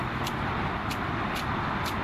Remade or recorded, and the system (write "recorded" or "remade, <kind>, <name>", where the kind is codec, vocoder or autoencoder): recorded